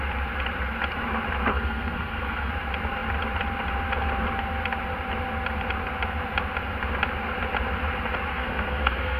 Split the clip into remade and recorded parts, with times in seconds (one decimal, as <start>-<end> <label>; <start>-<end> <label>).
0.0-1.5 recorded; 1.5-2.5 remade; 2.5-8.3 recorded; 8.3-9.2 remade